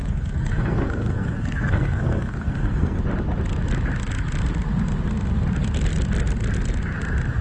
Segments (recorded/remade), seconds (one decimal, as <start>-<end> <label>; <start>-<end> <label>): 0.0-3.0 remade; 3.0-7.4 recorded